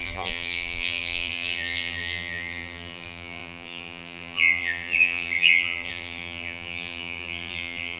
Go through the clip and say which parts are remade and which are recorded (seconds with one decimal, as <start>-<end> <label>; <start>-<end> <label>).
0.0-8.0 remade